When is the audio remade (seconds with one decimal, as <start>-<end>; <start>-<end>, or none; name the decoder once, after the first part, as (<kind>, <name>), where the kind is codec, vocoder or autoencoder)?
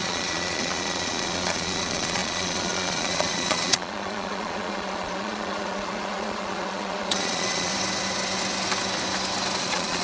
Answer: 0.0-7.7 (vocoder, Vocos); 9.6-10.0